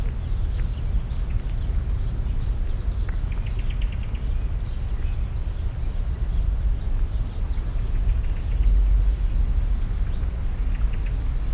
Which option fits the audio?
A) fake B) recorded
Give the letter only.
B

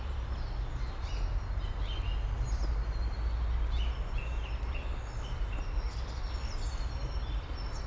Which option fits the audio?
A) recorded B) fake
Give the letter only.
A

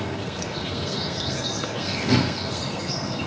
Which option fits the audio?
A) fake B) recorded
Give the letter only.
A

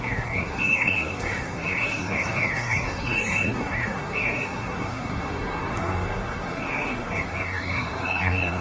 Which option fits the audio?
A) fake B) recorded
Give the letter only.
A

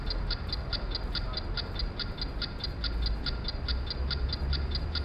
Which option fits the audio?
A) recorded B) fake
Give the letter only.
A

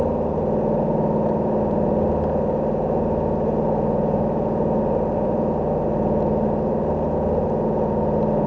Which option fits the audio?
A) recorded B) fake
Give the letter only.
A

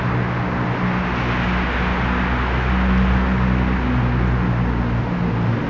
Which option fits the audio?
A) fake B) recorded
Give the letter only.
B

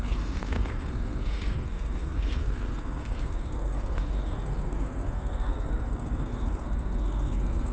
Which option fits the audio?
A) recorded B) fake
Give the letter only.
B